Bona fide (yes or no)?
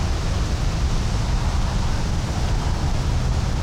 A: yes